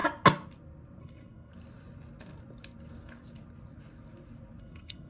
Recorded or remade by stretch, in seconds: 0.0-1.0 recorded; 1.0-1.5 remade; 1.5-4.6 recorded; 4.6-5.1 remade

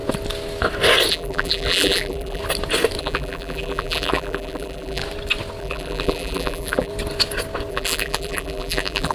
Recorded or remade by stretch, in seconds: 0.0-1.1 recorded; 1.1-2.4 remade; 2.4-3.0 recorded; 3.0-5.0 remade; 5.0-5.6 recorded; 5.6-6.9 remade; 6.9-7.7 recorded; 7.7-9.1 remade

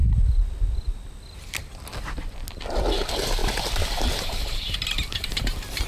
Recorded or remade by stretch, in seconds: 0.0-5.9 recorded